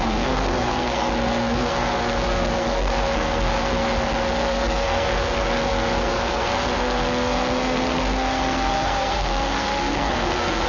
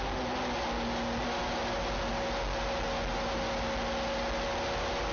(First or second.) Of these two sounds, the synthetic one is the first